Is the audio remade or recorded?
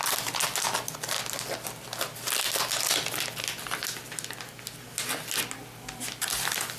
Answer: recorded